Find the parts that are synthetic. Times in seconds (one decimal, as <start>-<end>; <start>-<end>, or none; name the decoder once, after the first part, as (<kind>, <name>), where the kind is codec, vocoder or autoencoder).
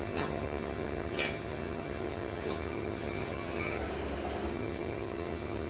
0.0-3.8 (vocoder, HiFi-GAN); 4.5-5.7